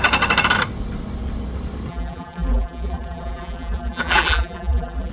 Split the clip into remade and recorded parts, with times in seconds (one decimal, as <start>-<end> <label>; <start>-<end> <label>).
0.0-1.9 recorded; 1.9-5.1 remade